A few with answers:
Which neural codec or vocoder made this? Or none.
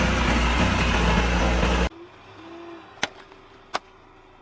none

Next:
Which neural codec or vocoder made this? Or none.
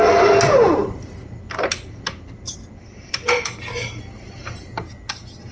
none